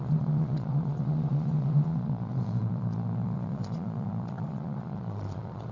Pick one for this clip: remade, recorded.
remade